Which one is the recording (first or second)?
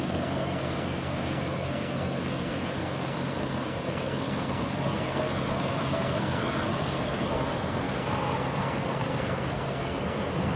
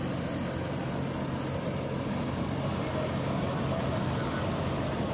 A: second